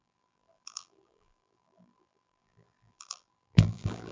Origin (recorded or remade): remade